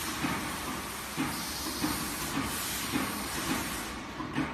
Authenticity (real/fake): real